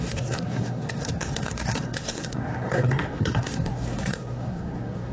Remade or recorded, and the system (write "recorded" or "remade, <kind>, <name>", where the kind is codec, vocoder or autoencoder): remade, codec, SNAC